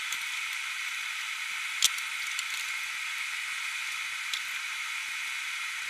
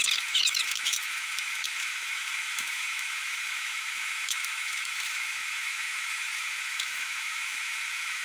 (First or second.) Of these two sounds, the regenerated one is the second